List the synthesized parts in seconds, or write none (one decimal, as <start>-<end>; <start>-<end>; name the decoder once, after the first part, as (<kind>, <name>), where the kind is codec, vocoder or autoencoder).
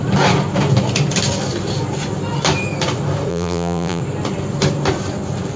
3.3-4.0 (vocoder, BigVGAN v2)